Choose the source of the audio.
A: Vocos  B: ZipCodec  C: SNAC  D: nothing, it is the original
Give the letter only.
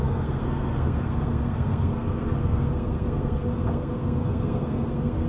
C